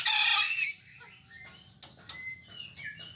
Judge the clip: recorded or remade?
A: recorded